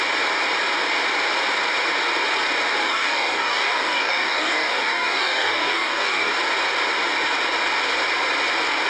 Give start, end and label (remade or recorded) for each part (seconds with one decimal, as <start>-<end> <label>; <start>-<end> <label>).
0.0-2.8 recorded; 2.8-6.3 remade; 6.3-8.9 recorded